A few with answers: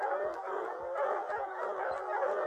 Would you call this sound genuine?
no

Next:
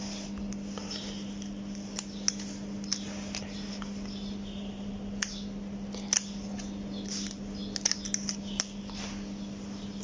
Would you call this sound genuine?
yes